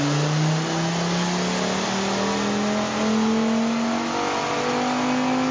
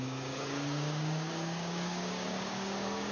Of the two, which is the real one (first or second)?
first